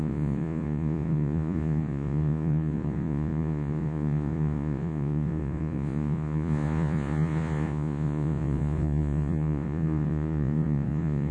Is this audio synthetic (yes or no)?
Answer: yes